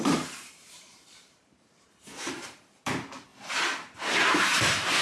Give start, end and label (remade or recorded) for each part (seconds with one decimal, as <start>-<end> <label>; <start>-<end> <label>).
0.0-3.3 remade; 3.3-4.1 recorded; 4.1-5.0 remade